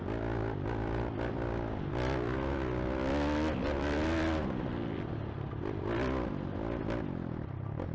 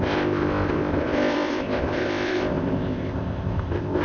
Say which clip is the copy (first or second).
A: second